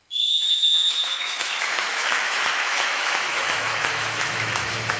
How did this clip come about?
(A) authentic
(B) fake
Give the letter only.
B